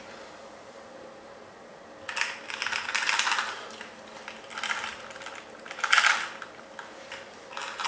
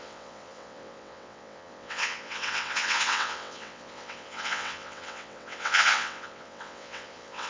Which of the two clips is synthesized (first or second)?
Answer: second